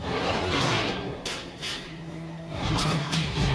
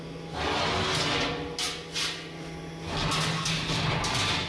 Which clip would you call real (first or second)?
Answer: second